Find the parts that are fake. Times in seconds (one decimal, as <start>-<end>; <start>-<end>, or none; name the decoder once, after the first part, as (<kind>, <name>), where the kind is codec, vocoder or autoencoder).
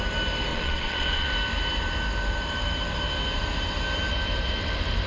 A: 0.5-1.3 (vocoder, WaveNeXt)